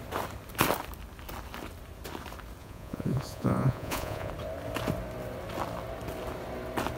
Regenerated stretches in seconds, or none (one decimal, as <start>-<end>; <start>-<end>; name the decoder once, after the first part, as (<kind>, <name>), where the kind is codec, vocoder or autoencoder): 2.6-4.3 (vocoder, Vocos)